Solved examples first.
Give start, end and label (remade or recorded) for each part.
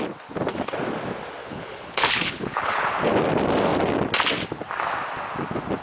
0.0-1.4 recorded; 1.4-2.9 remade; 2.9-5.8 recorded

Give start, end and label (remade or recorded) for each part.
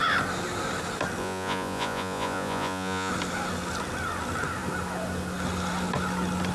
0.0-1.2 recorded; 1.2-3.1 remade; 3.1-6.5 recorded